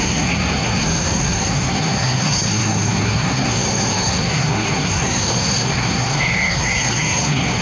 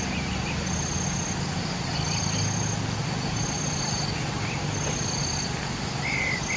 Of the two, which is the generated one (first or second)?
first